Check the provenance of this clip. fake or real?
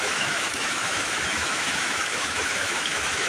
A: fake